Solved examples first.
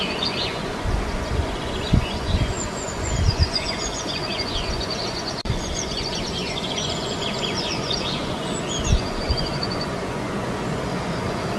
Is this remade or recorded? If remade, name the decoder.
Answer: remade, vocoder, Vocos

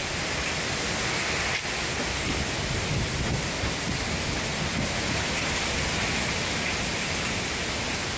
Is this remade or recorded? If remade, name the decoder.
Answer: recorded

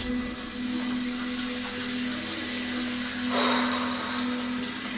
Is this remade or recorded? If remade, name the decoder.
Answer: recorded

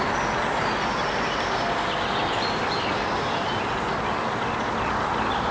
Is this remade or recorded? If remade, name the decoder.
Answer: recorded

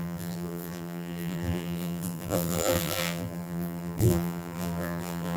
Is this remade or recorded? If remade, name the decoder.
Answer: remade, vocoder, BigVGAN v2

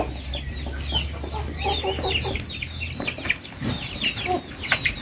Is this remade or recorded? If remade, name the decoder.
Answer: recorded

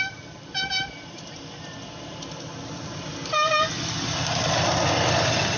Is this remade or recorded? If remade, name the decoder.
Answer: recorded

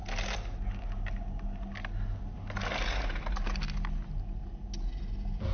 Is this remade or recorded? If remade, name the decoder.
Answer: recorded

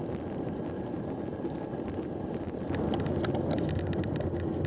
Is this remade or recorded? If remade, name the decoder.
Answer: recorded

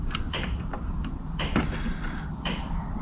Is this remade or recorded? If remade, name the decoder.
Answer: remade, vocoder, BigVGAN v2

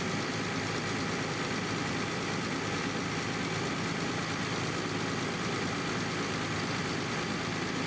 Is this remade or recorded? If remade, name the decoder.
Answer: recorded